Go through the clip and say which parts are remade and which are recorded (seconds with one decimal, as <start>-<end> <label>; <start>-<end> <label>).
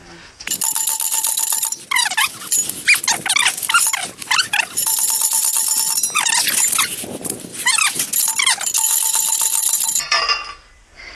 0.0-11.1 recorded